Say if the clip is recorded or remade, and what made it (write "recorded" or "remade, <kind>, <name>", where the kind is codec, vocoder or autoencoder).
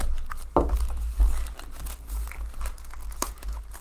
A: recorded